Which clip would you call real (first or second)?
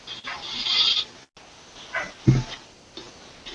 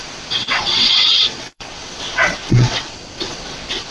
first